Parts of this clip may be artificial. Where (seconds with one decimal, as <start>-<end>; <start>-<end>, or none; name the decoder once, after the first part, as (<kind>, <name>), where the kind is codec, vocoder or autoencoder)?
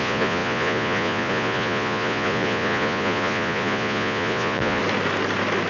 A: 0.0-4.8 (vocoder, Vocos)